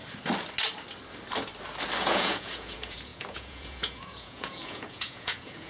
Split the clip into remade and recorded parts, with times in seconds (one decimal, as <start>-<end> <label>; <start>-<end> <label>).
0.0-2.0 recorded; 2.0-5.7 remade